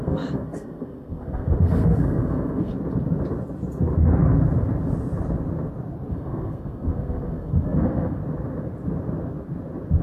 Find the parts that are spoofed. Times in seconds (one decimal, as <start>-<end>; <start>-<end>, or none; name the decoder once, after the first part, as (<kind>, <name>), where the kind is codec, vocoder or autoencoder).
0.0-2.7 (codec, SNAC); 6.1-8.2

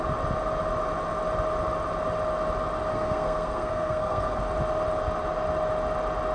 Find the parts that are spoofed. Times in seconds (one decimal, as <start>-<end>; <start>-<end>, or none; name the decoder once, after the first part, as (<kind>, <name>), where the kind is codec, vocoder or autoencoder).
2.9-4.4 (codec, SNAC)

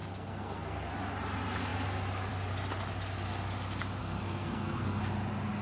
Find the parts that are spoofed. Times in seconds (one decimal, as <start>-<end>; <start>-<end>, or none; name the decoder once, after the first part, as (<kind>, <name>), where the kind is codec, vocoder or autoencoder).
0.0-0.9 (codec, SNAC); 4.0-5.0

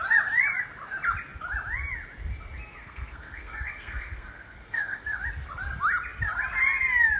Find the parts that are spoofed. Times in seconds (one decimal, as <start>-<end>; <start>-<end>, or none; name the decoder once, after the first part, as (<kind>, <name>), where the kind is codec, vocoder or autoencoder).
2.8-5.2 (codec, SNAC)